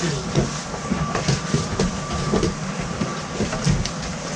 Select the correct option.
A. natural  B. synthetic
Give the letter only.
A